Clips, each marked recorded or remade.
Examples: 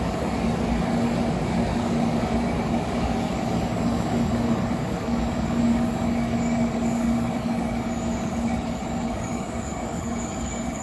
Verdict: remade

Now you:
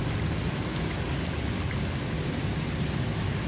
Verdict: recorded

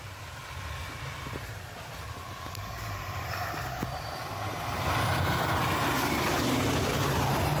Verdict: recorded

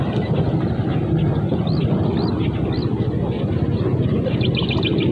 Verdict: recorded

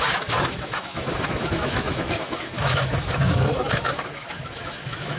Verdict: remade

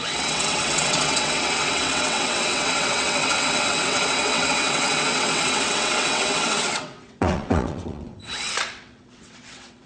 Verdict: remade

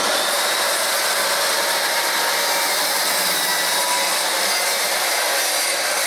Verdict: remade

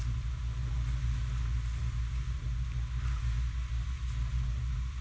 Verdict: recorded